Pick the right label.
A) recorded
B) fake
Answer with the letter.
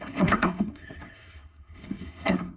B